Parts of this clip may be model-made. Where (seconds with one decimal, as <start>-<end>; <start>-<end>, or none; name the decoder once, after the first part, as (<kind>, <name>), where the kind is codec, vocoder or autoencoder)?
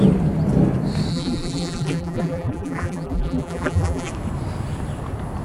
1.1-4.1 (vocoder, BigVGAN v2)